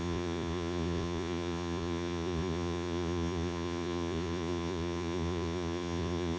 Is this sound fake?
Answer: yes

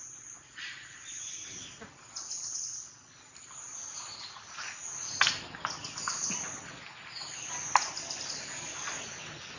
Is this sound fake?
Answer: no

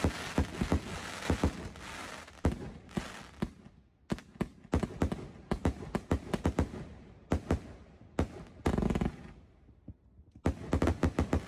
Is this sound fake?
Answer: no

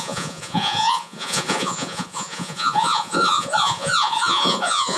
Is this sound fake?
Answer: yes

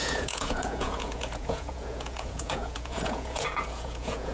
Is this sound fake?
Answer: yes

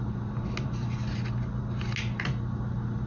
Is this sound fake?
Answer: no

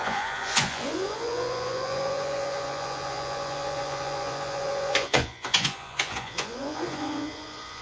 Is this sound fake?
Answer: yes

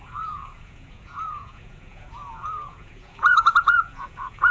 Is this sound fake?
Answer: yes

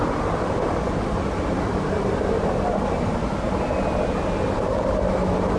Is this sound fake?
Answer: no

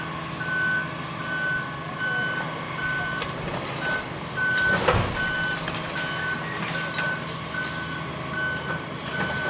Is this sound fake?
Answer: no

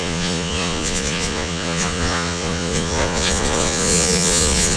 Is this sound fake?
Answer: yes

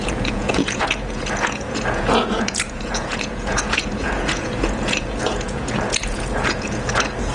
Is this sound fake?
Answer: yes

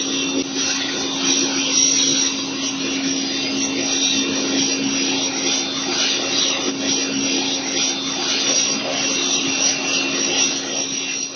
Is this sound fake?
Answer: no